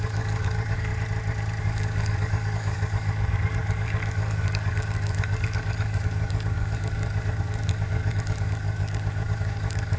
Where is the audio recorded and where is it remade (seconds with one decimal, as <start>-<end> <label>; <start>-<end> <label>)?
0.0-0.9 remade; 0.9-1.6 recorded; 1.6-10.0 remade